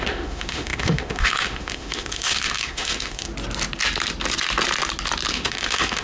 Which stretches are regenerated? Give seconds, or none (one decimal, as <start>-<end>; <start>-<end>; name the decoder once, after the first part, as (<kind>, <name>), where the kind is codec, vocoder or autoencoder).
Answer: 0.0-3.3 (autoencoder, DAC-VAE); 5.3-6.0

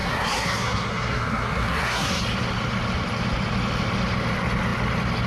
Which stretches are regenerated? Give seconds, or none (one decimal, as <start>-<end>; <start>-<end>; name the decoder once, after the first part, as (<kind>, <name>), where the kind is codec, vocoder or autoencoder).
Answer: 0.0-2.2 (codec, SNAC)

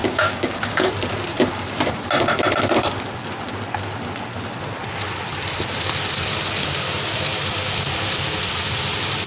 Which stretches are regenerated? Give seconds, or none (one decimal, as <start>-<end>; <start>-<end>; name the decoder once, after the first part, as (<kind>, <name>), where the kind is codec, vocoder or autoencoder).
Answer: 0.0-0.9 (codec, DAC)

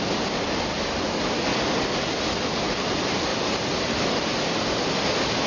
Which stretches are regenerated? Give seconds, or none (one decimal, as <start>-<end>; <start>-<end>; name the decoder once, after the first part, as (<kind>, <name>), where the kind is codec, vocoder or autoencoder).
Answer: none

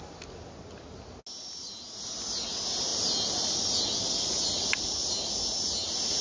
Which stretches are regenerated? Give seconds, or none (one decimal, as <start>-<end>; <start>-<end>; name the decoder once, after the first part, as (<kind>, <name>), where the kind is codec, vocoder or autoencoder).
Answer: none

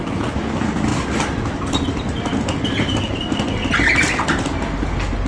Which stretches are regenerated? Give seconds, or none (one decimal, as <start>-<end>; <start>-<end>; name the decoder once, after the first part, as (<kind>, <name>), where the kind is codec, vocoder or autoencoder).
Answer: none